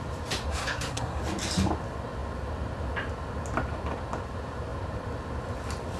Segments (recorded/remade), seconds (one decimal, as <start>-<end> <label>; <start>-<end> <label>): 0.0-0.5 recorded; 0.5-1.2 remade; 1.2-6.0 recorded